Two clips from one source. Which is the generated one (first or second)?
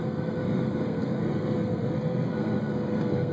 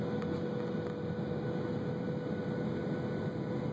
first